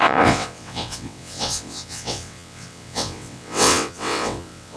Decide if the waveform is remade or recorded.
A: remade